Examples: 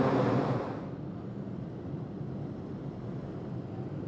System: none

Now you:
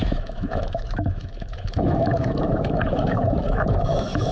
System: autoencoder, DAC-VAE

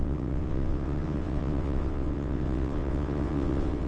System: vocoder, WaveNeXt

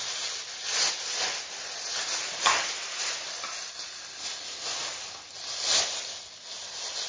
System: none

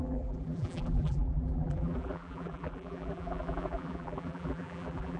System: vocoder, BigVGAN v2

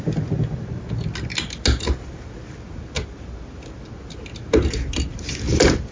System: none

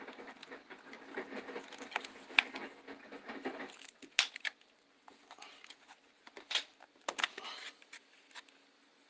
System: none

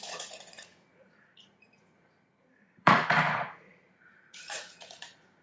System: vocoder, Vocos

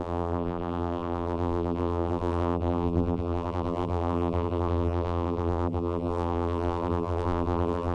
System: vocoder, BigVGAN v2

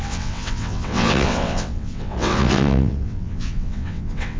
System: vocoder, WaveNeXt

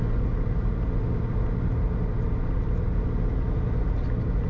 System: none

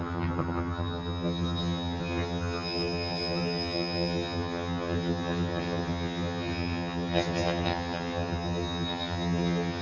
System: vocoder, HiFi-GAN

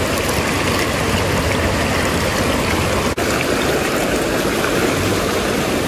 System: none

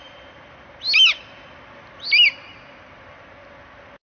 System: none